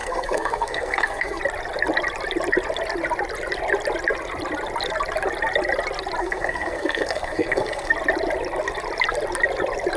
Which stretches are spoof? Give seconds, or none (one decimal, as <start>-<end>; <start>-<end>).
0.0-1.4; 6.2-7.9